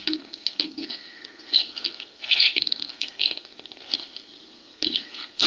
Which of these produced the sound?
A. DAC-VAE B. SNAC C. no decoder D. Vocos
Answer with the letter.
B